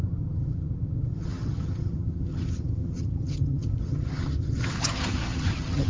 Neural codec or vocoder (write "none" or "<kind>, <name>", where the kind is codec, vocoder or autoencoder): vocoder, HiFi-GAN